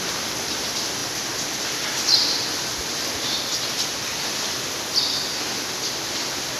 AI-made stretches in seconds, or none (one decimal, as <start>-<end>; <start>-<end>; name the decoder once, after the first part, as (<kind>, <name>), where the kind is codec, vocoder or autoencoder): none